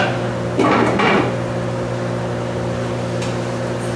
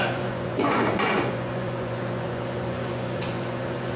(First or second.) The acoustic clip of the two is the first